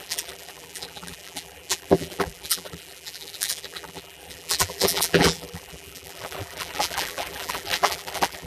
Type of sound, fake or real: fake